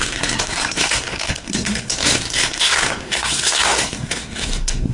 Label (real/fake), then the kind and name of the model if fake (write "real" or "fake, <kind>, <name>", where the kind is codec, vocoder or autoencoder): fake, codec, SNAC